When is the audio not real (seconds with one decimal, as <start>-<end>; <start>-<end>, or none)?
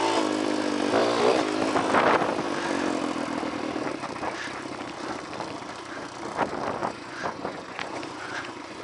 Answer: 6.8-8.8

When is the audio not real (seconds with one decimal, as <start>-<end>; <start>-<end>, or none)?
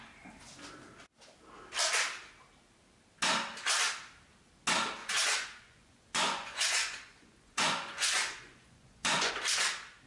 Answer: 5.0-9.3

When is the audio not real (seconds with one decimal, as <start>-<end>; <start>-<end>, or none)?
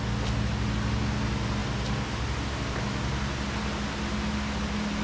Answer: none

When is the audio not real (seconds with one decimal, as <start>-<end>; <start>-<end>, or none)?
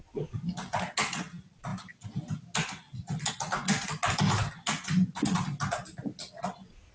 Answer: none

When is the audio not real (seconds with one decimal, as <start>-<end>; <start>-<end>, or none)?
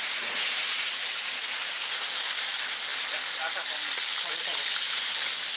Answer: 0.0-2.4